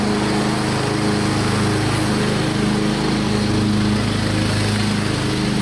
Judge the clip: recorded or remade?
recorded